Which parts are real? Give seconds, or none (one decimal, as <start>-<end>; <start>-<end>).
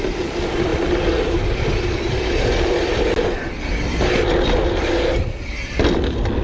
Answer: 0.0-6.4